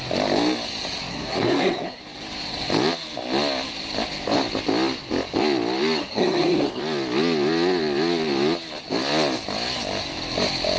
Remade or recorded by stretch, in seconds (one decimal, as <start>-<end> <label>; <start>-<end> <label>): 0.0-1.1 recorded; 1.1-2.0 remade; 2.0-6.0 recorded; 6.0-6.8 remade; 6.8-10.8 recorded